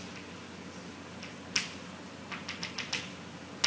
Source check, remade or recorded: recorded